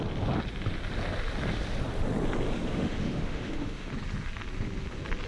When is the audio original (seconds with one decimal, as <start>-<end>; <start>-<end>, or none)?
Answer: 0.0-2.7; 3.9-5.3